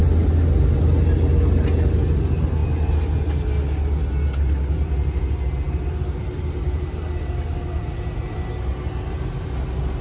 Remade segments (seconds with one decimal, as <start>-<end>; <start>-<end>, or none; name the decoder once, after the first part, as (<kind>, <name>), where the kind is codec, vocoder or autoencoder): none